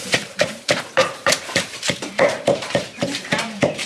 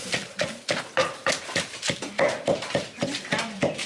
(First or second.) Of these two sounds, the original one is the second